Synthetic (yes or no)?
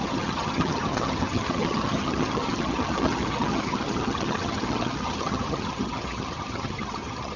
yes